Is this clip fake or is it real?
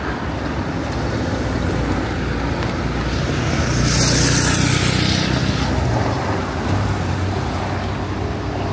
real